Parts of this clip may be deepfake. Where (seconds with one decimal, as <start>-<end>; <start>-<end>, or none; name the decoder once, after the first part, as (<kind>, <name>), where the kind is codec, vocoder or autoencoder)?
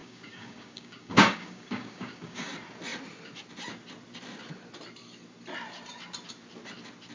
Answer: 0.0-2.5 (codec, DAC)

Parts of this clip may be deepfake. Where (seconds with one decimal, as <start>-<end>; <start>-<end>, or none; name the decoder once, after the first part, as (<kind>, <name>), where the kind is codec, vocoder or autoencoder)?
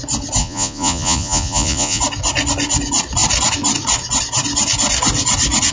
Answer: 0.4-2.0 (vocoder, Vocos)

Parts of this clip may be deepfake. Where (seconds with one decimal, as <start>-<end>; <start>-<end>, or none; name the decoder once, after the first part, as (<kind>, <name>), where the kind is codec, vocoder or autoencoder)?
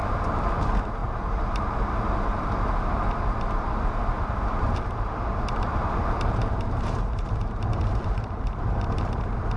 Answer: 0.5-9.6 (vocoder, BigVGAN v2)